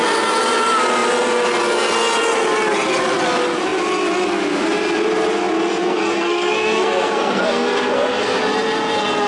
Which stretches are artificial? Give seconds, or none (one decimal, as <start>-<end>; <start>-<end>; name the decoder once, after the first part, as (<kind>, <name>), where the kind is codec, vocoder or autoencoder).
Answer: 5.8-8.4 (codec, SNAC)